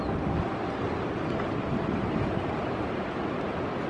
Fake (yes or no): no